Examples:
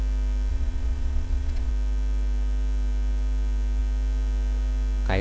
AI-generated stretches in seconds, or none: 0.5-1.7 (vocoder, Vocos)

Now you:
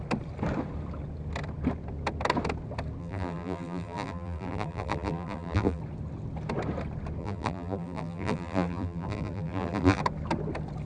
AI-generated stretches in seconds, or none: 3.0-5.8 (vocoder, BigVGAN v2); 7.2-10.0

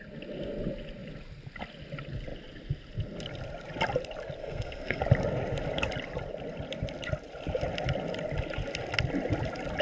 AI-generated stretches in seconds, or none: 4.4-5.0 (codec, SNAC)

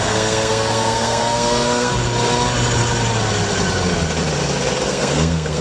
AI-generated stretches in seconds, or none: 0.0-1.9 (codec, SNAC); 4.9-5.6